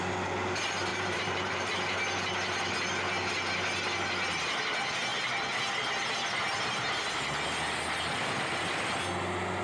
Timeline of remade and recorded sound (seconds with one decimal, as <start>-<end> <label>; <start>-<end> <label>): 0.0-0.9 recorded; 0.9-1.7 remade; 1.7-9.6 recorded